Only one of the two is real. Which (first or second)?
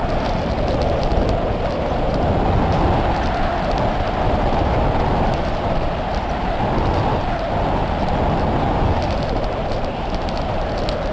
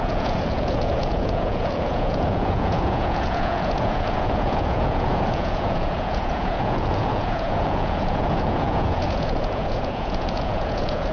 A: first